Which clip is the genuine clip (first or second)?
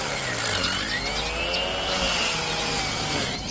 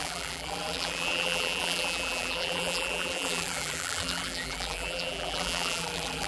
first